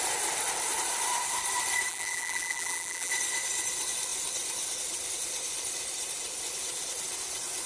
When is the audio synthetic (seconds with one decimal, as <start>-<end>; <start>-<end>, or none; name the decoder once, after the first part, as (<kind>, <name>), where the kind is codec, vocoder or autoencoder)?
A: 1.9-3.1 (vocoder, BigVGAN v2)